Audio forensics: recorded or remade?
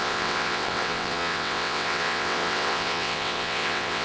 remade